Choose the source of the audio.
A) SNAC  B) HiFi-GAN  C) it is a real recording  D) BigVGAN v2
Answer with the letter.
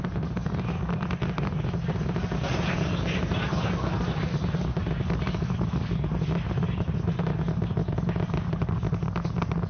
C